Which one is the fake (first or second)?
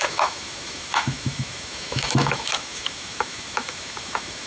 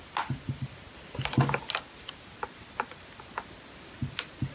first